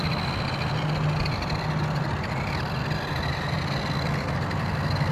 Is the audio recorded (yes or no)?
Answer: yes